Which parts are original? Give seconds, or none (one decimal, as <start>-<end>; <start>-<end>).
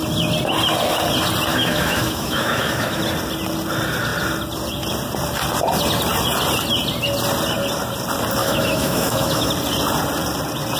0.0-1.5; 3.0-8.4; 9.5-10.8